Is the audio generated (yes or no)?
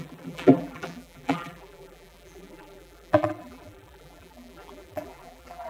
yes